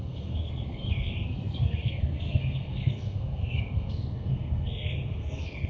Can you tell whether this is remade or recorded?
remade